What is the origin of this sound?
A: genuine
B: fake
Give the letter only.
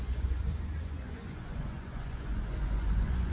B